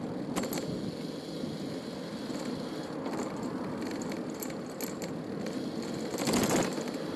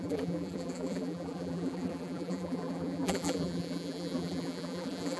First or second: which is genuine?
first